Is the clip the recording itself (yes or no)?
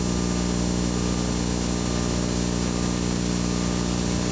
yes